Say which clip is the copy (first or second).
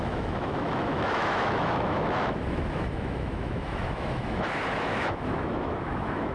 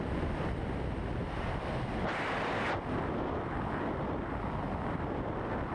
first